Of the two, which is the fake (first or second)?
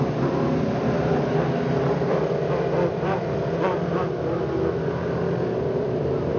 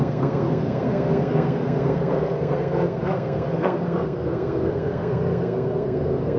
second